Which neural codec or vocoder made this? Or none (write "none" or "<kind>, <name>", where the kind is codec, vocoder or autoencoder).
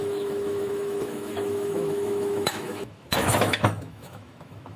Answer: autoencoder, DAC-VAE